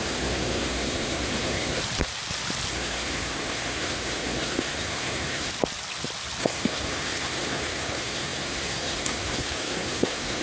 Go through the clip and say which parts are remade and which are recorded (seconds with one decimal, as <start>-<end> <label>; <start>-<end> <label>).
0.0-1.8 remade; 1.8-2.7 recorded; 2.7-5.5 remade; 5.5-6.4 recorded; 6.4-10.4 remade

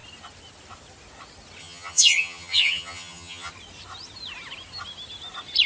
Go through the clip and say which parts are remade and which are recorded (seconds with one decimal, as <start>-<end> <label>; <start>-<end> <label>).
0.0-1.6 recorded; 1.6-3.5 remade; 3.5-5.7 recorded

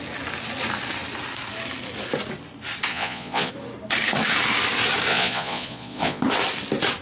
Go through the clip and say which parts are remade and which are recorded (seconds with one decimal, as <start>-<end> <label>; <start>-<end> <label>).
0.0-2.9 recorded; 2.9-3.5 remade; 3.5-5.1 recorded; 5.1-6.2 remade; 6.2-7.0 recorded

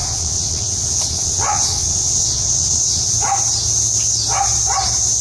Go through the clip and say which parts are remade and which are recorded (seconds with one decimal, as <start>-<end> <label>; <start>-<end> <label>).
0.0-3.1 remade; 3.1-5.2 recorded

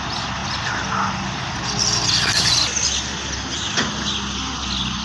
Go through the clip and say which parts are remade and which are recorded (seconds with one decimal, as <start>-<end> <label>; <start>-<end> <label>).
0.0-5.0 recorded

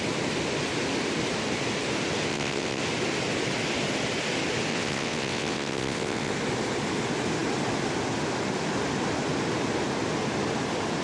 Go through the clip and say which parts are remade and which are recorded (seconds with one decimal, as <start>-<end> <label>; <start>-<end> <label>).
0.0-2.3 recorded; 2.3-2.8 remade; 2.8-4.7 recorded; 4.7-6.3 remade; 6.3-11.0 recorded

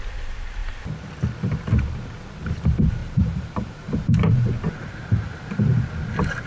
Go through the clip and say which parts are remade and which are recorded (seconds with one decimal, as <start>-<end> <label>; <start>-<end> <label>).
0.0-3.0 recorded; 3.0-5.9 remade; 5.9-6.5 recorded

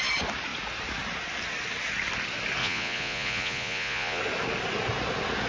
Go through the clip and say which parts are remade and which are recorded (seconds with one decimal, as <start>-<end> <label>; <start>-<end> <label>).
0.0-2.6 recorded; 2.6-4.2 remade; 4.2-5.5 recorded